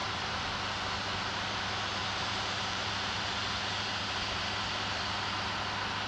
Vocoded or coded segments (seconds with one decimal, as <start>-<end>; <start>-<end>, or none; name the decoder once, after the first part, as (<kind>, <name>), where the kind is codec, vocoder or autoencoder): 0.0-0.5 (vocoder, BigVGAN v2); 2.0-3.4